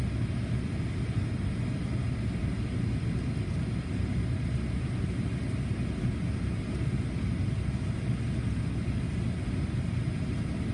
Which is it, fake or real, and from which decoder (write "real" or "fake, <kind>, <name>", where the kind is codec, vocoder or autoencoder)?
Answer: real